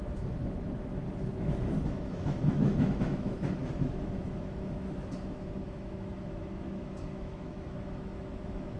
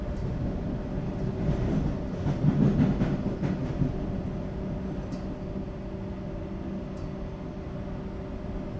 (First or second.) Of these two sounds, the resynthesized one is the first